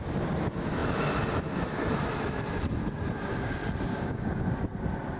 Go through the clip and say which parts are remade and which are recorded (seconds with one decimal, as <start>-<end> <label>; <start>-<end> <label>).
0.0-3.9 recorded; 3.9-4.4 remade; 4.4-5.2 recorded